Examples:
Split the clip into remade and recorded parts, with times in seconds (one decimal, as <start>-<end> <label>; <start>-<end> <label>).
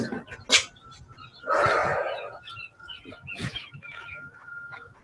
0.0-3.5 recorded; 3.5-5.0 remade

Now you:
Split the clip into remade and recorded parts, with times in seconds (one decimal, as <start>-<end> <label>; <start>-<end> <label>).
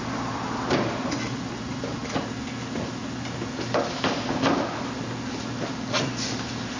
0.0-6.8 recorded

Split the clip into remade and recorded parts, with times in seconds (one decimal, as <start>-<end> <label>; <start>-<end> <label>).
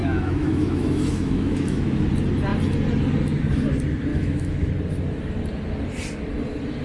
0.0-2.0 remade; 2.0-4.1 recorded; 4.1-4.7 remade; 4.7-6.8 recorded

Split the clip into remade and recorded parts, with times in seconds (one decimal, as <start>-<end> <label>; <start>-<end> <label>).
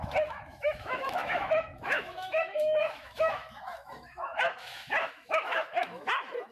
0.0-6.5 remade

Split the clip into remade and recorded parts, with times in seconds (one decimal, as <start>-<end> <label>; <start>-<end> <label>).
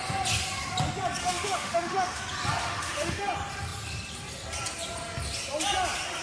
0.0-1.2 recorded; 1.2-2.2 remade; 2.2-2.6 recorded; 2.6-3.3 remade; 3.3-6.2 recorded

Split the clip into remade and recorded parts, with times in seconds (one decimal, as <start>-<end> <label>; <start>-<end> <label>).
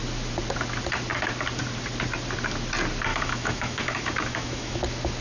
0.0-3.1 recorded; 3.1-4.8 remade; 4.8-5.2 recorded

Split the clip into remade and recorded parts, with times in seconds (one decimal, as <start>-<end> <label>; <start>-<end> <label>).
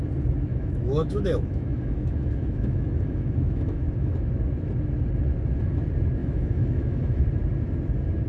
0.0-0.5 recorded; 0.5-4.1 remade; 4.1-6.2 recorded; 6.2-7.2 remade; 7.2-8.3 recorded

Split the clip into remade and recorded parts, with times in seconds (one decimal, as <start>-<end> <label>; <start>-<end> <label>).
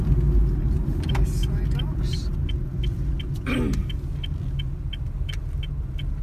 0.0-6.2 recorded